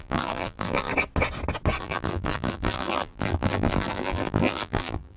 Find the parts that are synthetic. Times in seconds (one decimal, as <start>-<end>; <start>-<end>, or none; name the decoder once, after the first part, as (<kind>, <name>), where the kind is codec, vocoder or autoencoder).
0.0-0.9 (vocoder, BigVGAN v2); 1.8-5.2